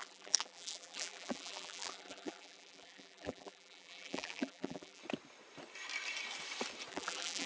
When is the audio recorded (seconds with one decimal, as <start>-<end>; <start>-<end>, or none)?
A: 5.0-6.9